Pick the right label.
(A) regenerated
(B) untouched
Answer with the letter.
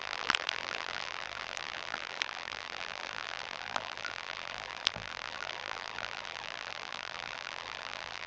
A